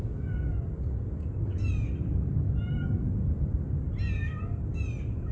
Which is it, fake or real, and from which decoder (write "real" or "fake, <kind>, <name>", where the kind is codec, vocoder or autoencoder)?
real